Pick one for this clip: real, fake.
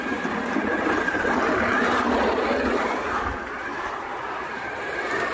fake